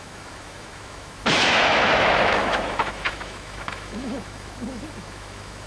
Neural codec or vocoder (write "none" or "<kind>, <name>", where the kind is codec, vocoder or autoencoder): autoencoder, DAC-VAE